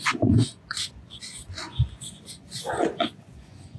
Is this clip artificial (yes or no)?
yes